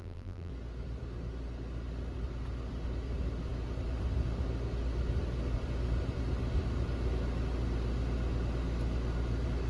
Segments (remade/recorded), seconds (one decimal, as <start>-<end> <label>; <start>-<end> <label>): 0.0-0.5 remade; 0.5-9.7 recorded